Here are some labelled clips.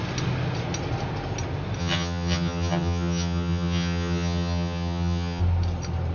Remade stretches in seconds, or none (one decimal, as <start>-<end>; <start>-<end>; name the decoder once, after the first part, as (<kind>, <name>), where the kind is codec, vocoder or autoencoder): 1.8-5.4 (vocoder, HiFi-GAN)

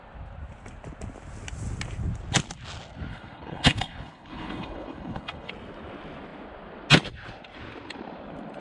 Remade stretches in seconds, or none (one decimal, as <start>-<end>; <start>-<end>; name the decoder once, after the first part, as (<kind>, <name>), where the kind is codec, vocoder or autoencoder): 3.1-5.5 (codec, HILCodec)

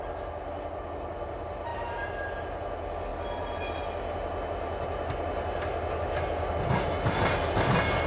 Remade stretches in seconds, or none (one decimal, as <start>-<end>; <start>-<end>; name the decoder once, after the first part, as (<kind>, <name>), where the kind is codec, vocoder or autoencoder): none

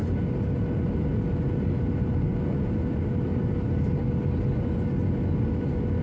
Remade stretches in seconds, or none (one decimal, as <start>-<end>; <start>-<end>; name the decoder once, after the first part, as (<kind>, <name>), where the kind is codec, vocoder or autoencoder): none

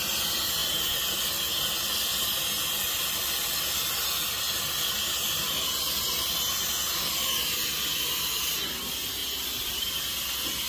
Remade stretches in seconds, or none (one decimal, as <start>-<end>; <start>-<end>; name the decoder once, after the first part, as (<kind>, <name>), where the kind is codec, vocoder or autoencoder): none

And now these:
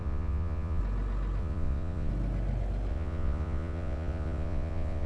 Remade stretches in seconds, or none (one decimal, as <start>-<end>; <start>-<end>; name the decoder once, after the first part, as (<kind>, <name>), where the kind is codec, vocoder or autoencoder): 0.0-0.8 (vocoder, Vocos); 1.4-2.1; 2.9-5.1

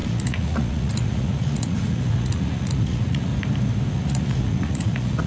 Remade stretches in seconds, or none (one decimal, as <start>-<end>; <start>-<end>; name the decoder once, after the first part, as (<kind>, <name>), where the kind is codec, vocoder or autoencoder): 0.0-3.3 (vocoder, Vocos); 3.9-5.3

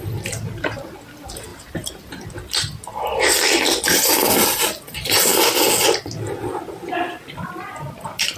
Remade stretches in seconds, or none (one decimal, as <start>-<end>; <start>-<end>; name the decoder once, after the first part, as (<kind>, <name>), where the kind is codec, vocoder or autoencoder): 1.5-2.1 (vocoder, BigVGAN v2)